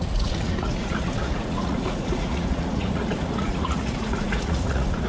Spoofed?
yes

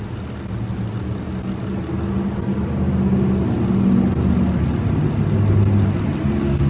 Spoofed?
no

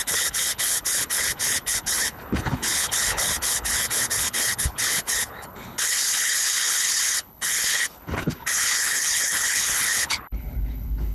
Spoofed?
yes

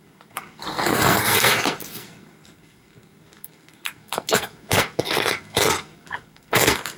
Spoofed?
yes